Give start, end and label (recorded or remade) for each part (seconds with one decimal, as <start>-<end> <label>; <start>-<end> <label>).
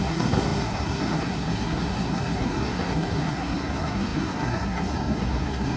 0.0-5.8 remade